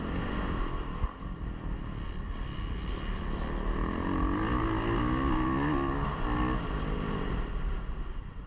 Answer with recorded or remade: recorded